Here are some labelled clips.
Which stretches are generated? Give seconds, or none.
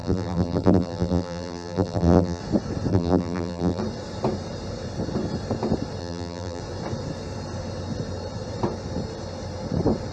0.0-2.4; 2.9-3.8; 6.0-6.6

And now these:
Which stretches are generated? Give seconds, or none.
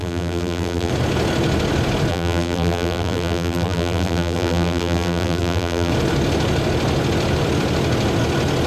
0.0-0.9; 2.1-5.9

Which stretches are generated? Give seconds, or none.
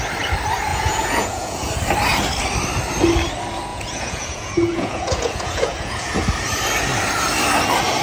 0.7-1.7; 3.7-6.1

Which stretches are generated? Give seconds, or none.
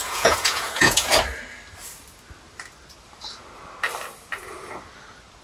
0.0-1.1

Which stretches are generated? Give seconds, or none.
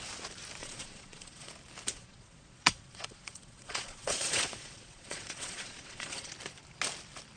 0.6-1.5; 1.9-6.3